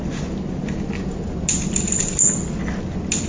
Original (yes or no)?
yes